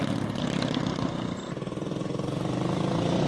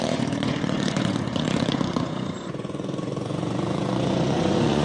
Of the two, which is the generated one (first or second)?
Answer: second